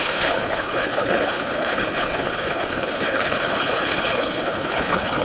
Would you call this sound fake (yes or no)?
yes